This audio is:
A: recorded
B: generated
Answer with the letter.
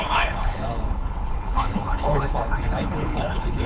B